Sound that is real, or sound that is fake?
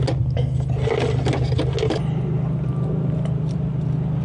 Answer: real